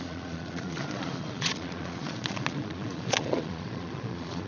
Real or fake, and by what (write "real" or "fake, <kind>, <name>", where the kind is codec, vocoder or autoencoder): fake, vocoder, Vocos